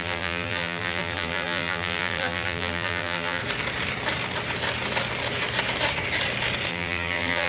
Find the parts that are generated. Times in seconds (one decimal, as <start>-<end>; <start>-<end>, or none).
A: 0.0-3.4; 6.7-7.5